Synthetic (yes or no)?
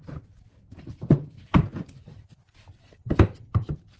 no